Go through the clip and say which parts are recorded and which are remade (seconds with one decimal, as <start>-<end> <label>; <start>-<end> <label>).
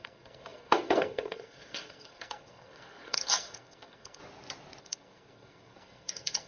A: 0.0-4.2 remade; 4.2-4.8 recorded; 4.8-6.5 remade